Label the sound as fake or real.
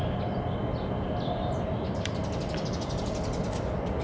real